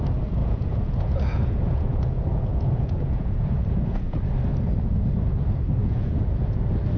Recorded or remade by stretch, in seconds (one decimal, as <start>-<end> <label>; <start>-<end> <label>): 0.0-0.4 recorded; 0.4-4.2 remade; 4.2-5.8 recorded; 5.8-6.6 remade; 6.6-7.0 recorded